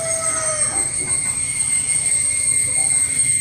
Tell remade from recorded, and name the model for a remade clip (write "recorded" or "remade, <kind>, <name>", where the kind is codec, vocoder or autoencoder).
recorded